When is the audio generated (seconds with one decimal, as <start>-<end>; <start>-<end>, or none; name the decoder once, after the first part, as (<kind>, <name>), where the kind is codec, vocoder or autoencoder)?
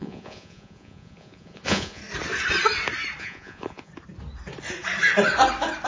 0.0-2.0 (vocoder, Vocos); 3.2-3.9